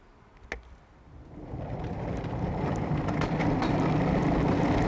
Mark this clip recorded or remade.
recorded